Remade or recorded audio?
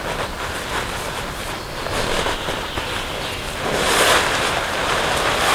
recorded